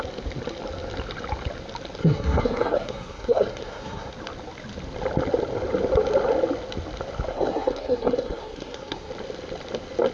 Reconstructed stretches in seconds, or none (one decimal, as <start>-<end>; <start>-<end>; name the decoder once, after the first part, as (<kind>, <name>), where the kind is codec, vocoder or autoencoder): 2.0-4.1 (codec, SNAC); 7.3-9.1

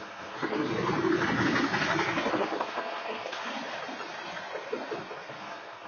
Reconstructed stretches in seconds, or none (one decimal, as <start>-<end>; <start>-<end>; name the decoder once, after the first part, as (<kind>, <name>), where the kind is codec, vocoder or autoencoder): 0.0-0.7 (codec, SNAC); 2.3-3.5; 5.3-5.9

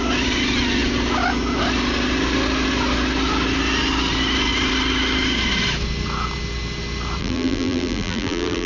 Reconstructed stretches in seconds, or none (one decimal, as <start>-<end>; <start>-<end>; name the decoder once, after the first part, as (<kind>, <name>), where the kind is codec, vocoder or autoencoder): 7.2-8.7 (vocoder, BigVGAN v2)

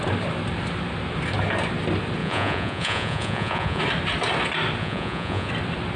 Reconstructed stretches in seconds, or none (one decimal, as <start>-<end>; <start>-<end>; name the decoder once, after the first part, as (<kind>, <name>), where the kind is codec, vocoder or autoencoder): 2.2-3.8 (vocoder, Vocos); 4.8-5.5

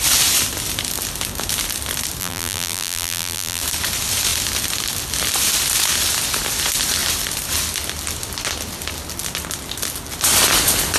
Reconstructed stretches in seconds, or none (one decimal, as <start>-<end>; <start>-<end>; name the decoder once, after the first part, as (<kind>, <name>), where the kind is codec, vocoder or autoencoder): 2.2-3.6 (vocoder, BigVGAN v2)

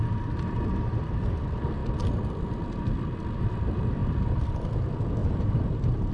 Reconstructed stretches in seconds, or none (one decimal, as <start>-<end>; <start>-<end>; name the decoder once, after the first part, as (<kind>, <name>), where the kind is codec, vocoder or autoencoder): 5.2-6.1 (vocoder, BigVGAN v2)

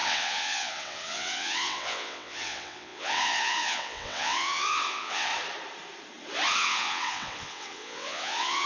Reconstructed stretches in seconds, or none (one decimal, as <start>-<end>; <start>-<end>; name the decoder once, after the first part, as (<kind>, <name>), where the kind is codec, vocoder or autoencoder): 0.0-5.3 (vocoder, WaveNeXt); 6.5-8.7